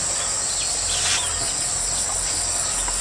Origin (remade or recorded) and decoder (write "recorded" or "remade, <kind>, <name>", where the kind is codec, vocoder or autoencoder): recorded